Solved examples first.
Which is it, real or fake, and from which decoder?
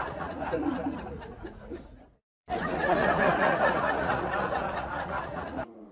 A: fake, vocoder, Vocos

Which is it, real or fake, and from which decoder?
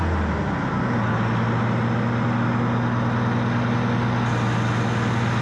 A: real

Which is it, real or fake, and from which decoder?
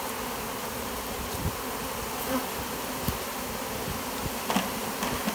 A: real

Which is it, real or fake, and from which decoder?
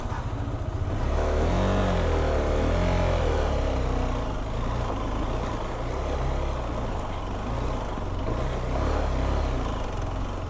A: real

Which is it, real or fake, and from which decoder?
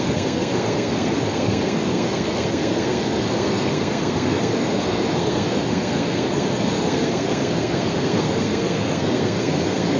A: fake, codec, SNAC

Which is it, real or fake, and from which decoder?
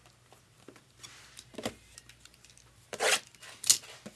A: real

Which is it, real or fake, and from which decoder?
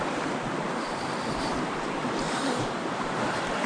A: real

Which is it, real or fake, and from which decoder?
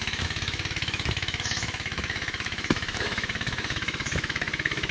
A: fake, autoencoder, DAC-VAE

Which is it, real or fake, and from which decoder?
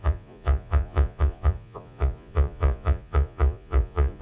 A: fake, vocoder, Vocos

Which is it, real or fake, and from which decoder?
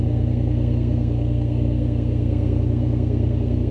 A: fake, codec, SNAC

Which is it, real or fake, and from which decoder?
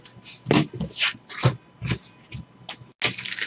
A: real